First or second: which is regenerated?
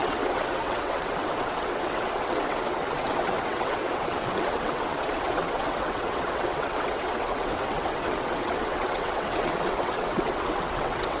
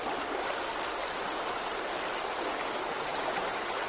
first